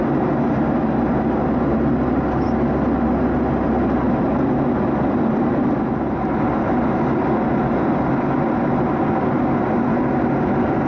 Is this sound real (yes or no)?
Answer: yes